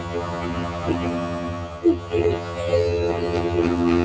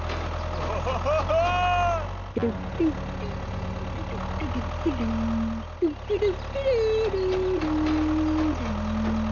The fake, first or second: first